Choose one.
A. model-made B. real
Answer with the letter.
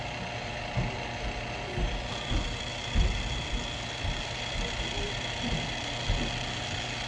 B